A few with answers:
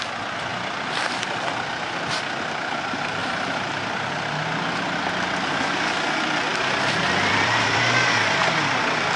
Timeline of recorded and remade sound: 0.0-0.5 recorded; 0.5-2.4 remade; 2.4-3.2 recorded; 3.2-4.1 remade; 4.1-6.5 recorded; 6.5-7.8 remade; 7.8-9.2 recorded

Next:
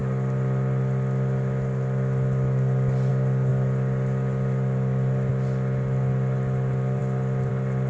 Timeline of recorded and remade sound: 0.0-7.9 recorded

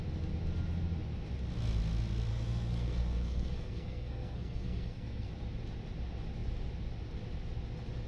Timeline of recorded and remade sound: 0.0-2.3 recorded; 2.3-5.3 remade; 5.3-8.1 recorded